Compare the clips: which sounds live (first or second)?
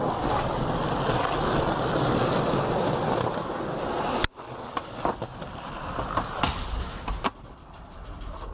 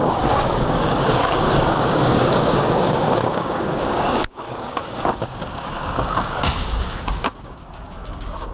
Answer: first